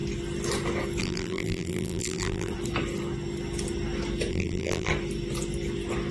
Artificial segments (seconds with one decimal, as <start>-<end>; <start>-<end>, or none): 1.0-2.5; 4.3-4.9